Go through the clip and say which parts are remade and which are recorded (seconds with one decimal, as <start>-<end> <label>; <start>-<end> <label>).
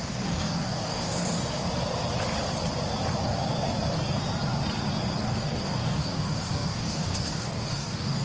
0.0-1.4 remade; 1.4-5.2 recorded; 5.2-8.2 remade